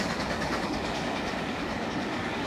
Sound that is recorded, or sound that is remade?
remade